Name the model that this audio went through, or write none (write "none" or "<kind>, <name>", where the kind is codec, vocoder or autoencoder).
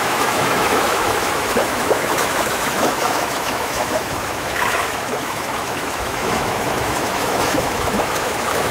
autoencoder, DAC-VAE